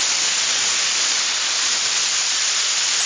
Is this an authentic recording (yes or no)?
yes